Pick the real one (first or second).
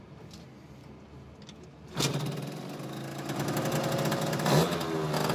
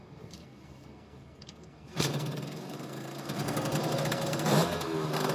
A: first